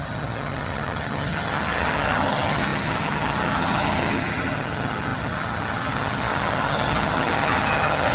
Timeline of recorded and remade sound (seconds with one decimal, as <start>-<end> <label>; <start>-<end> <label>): 0.0-8.1 remade